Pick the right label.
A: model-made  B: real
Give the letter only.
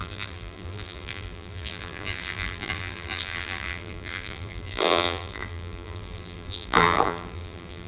A